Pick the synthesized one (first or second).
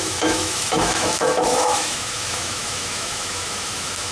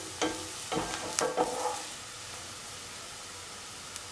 first